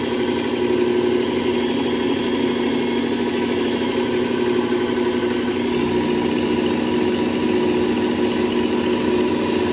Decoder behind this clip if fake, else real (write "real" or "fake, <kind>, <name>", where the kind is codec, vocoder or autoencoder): real